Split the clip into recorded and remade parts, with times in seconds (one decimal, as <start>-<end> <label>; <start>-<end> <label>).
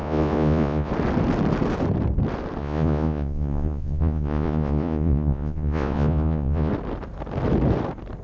0.0-0.9 remade; 0.9-2.6 recorded; 2.6-6.7 remade; 6.7-8.2 recorded